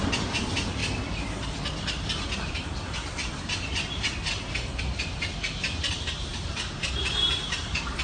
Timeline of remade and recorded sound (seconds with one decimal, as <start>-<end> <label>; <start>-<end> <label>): 0.0-0.8 remade; 0.8-4.8 recorded; 4.8-8.0 remade